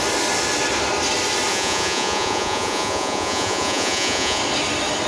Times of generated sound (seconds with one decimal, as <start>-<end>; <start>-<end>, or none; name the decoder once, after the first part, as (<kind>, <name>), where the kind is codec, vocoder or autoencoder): 1.5-4.4 (vocoder, Vocos)